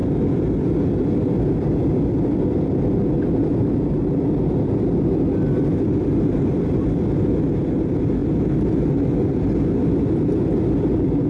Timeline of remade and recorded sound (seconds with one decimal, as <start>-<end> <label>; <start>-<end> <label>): 0.0-11.3 recorded